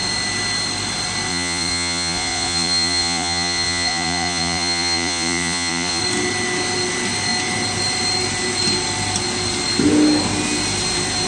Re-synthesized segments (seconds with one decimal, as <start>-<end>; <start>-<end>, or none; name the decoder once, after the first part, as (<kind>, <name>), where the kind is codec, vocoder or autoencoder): 1.3-6.0 (vocoder, Vocos)